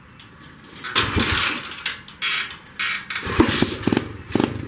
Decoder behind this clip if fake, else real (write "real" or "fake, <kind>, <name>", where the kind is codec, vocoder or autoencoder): real